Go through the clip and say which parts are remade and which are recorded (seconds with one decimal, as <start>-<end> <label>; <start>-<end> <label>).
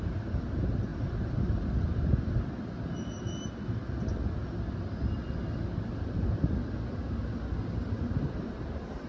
0.0-9.1 recorded